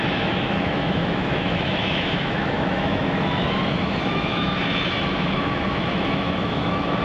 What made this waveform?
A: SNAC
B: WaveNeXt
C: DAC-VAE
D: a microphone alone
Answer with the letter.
C